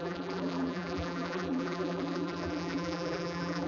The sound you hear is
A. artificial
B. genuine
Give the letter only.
A